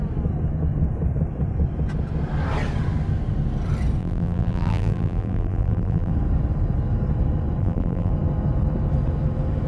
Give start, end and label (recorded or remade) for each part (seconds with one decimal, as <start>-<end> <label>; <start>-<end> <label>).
0.0-4.0 recorded; 4.0-6.1 remade; 6.1-7.6 recorded; 7.6-8.1 remade; 8.1-9.7 recorded